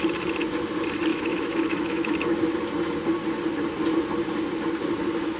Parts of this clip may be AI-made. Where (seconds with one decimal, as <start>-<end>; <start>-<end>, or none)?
1.1-2.1